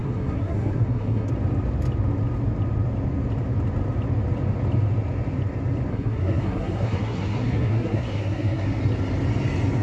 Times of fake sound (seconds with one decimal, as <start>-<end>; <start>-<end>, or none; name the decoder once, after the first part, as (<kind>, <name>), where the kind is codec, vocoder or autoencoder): 0.0-1.3 (codec, SNAC); 5.9-8.8